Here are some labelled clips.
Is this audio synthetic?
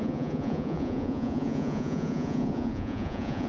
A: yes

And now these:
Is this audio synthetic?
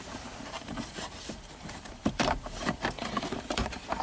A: yes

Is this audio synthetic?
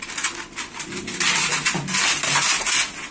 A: no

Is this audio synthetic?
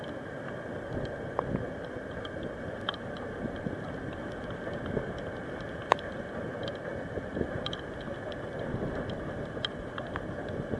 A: no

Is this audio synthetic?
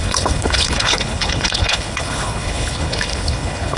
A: yes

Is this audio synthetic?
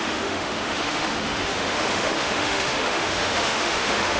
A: yes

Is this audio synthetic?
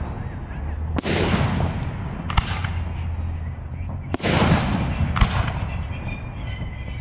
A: no